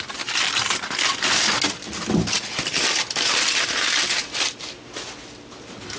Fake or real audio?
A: real